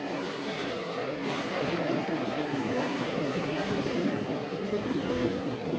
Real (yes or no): no